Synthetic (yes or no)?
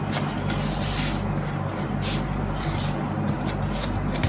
no